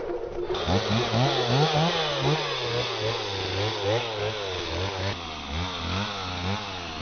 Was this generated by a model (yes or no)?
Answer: no